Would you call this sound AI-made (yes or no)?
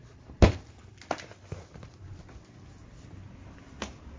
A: no